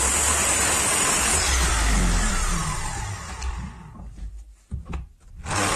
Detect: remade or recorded recorded